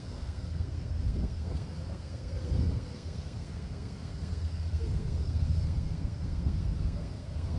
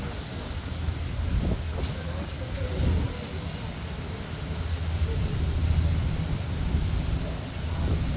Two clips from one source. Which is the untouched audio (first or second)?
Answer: second